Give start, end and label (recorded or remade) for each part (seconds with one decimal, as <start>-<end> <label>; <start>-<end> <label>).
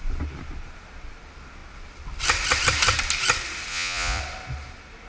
0.0-3.7 recorded; 3.7-4.2 remade; 4.2-5.1 recorded